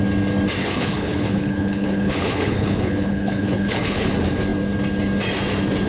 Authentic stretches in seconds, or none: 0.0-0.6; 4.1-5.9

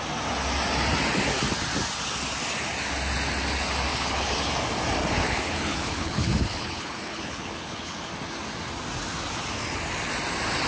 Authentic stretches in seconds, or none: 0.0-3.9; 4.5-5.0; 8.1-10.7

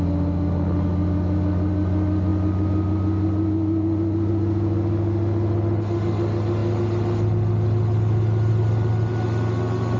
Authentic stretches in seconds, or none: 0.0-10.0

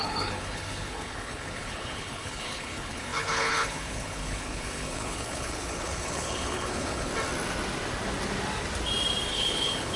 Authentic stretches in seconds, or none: 7.1-9.3

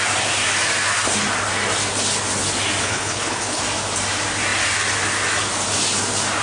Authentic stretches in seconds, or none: 0.0-2.8; 3.6-6.4

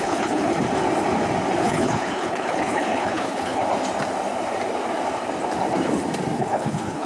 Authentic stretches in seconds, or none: 0.5-1.6; 3.6-6.4

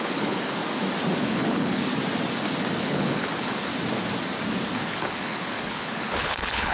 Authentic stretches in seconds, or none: 0.6-1.2; 1.9-2.8; 3.7-4.8